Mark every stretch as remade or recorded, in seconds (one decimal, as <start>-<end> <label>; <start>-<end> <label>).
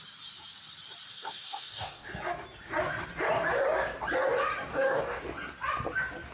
0.0-1.1 recorded; 1.1-2.1 remade; 2.1-4.7 recorded; 4.7-5.2 remade; 5.2-6.3 recorded